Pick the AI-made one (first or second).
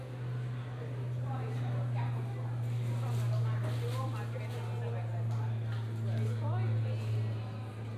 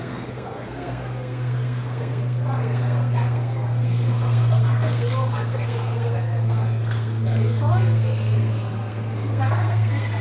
second